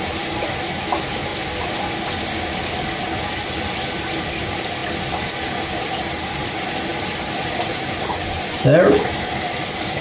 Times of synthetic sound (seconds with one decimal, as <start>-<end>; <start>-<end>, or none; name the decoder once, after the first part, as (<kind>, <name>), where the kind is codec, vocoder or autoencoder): 0.0-1.3 (vocoder, BigVGAN v2); 4.0-4.8; 5.8-10.0